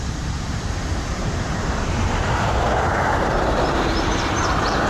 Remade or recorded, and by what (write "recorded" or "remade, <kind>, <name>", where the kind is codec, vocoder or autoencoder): remade, vocoder, BigVGAN v2